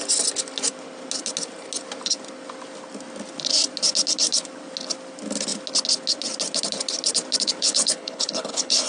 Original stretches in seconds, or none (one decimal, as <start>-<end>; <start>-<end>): 0.0-7.6